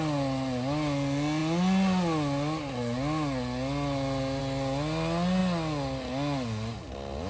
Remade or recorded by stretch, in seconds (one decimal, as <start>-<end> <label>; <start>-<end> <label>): 0.0-7.3 recorded